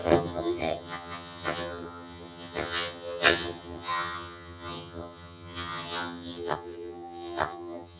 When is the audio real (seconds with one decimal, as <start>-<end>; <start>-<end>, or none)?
none